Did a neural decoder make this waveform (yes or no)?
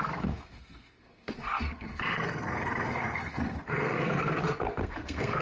yes